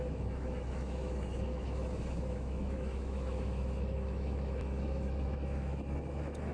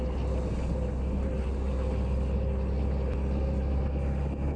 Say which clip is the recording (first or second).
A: second